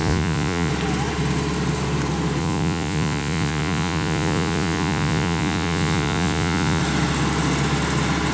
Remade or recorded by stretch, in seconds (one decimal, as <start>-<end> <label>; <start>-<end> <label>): 0.0-0.7 remade; 0.7-2.4 recorded; 2.4-6.8 remade; 6.8-8.3 recorded